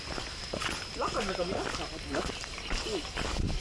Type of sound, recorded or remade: recorded